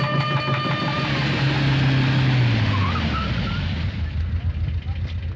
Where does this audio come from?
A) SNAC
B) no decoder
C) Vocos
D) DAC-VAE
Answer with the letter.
B